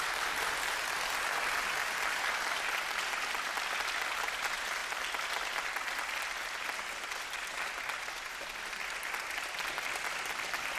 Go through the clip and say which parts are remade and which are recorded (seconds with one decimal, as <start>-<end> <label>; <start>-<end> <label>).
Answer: 0.0-10.8 recorded